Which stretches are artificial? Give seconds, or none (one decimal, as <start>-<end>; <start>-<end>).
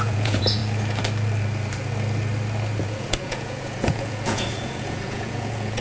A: 0.0-0.6; 2.8-5.8